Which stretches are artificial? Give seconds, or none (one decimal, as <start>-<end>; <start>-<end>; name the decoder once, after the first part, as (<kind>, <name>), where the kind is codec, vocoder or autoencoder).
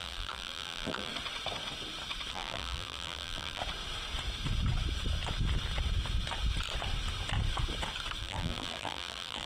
0.0-1.1 (vocoder, BigVGAN v2); 2.3-3.6; 8.2-9.5